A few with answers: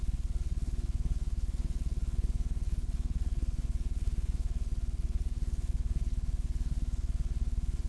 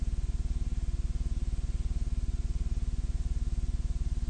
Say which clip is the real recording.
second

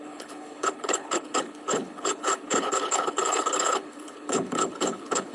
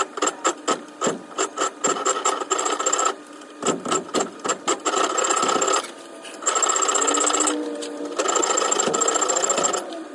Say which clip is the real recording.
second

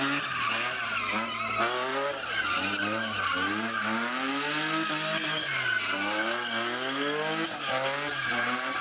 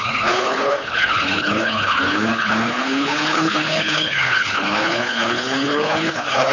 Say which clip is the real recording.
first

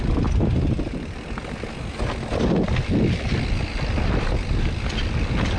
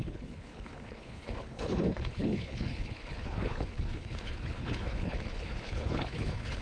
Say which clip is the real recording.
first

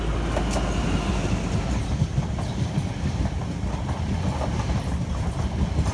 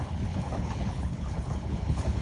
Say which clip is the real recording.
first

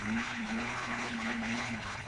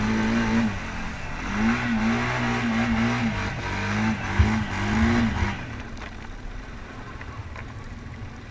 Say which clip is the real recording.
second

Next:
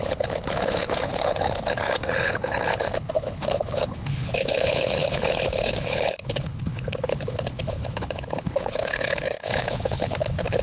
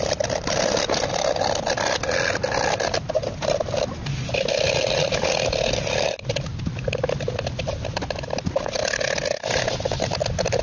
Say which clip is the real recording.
second